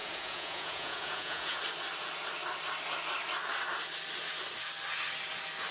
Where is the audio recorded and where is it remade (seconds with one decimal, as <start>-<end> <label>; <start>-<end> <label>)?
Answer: 0.0-1.6 remade; 1.6-5.7 recorded